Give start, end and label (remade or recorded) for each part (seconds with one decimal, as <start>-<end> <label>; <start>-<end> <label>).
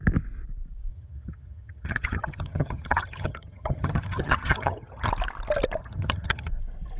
0.0-0.9 recorded; 0.9-5.1 remade; 5.1-5.8 recorded; 5.8-6.5 remade; 6.5-7.0 recorded